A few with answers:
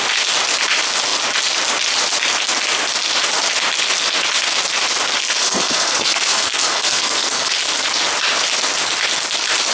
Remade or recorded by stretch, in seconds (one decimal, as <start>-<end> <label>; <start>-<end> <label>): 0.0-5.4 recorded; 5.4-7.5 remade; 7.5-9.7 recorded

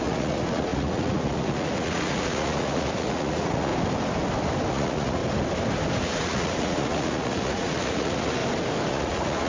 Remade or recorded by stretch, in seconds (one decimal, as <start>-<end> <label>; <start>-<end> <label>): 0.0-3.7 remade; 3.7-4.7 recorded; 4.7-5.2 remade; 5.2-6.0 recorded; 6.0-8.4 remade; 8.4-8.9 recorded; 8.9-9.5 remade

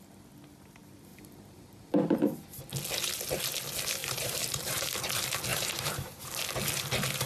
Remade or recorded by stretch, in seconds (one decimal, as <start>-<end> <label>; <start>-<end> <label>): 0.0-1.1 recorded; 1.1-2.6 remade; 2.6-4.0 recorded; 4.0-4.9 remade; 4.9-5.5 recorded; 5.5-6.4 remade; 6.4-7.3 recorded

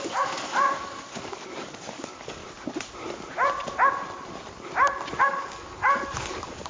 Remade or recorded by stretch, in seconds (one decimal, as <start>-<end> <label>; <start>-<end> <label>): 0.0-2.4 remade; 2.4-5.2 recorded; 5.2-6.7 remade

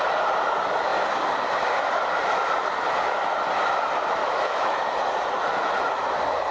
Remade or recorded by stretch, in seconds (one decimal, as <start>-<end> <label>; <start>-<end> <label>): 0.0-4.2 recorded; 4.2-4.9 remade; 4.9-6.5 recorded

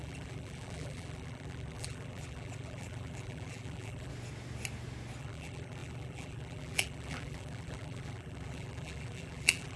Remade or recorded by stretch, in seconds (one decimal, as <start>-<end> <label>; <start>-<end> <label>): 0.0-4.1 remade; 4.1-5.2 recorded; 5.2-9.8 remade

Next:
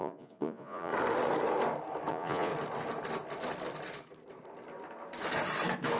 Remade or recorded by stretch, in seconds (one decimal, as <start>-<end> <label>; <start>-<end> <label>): 0.0-0.9 remade; 0.9-2.1 recorded; 2.1-2.5 remade; 2.5-6.0 recorded